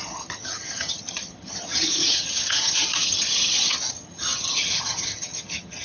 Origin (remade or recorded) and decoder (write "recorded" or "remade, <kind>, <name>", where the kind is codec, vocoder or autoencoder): remade, vocoder, HiFi-GAN